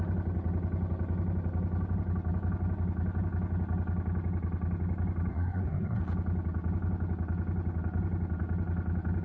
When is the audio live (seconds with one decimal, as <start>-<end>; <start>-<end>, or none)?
0.0-5.3; 6.0-9.2